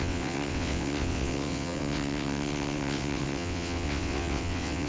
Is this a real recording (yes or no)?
no